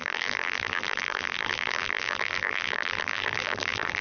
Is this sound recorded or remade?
remade